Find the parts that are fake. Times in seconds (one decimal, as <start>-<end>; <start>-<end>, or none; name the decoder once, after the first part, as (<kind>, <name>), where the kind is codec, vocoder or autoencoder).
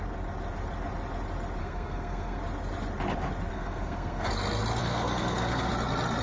1.6-2.4 (codec, SNAC); 3.5-4.3; 4.8-5.7